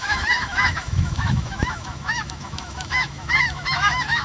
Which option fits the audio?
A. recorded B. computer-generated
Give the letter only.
B